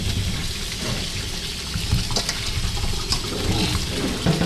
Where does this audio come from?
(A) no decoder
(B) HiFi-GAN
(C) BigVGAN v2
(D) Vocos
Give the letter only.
A